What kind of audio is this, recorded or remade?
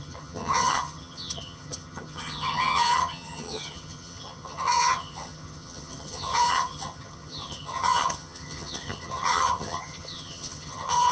remade